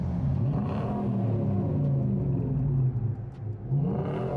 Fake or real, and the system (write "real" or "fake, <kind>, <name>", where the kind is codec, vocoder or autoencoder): real